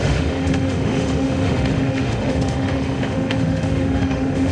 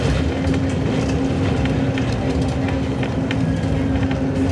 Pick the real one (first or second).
second